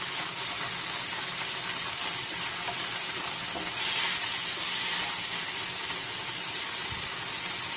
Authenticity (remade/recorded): recorded